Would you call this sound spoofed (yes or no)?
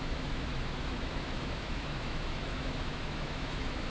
yes